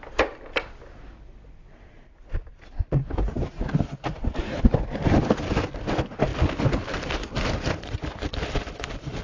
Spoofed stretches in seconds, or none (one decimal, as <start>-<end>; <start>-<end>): 3.0-4.4; 6.3-9.2